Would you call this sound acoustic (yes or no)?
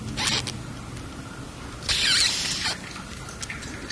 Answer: yes